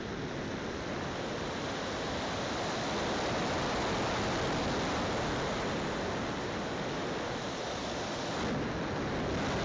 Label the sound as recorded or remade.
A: recorded